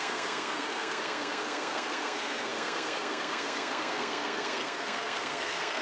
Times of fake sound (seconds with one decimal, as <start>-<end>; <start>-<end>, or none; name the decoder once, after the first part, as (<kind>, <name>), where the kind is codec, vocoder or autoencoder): 0.0-5.8 (codec, SNAC)